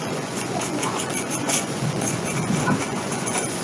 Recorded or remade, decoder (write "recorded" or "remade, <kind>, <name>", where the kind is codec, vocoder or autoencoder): remade, vocoder, Vocos